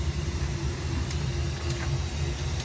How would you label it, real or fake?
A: real